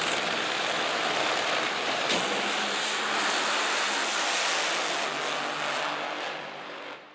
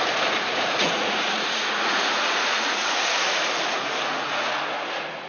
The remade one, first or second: second